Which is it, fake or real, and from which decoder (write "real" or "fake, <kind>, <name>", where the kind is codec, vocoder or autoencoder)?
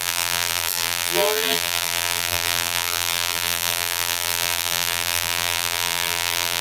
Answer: fake, vocoder, BigVGAN v2